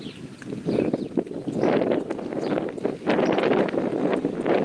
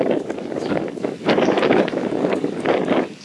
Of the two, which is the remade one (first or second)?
second